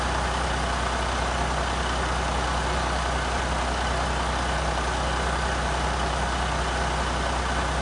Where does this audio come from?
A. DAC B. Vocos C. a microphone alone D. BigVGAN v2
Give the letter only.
C